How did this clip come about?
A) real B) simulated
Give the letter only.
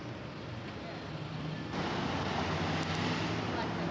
A